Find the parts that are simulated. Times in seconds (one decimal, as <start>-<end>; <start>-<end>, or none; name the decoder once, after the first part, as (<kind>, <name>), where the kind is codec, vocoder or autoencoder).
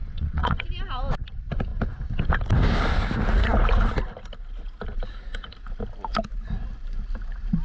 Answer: 0.0-0.7 (vocoder, WaveNeXt)